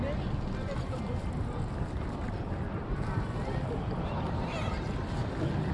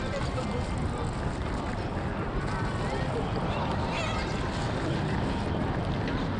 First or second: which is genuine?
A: second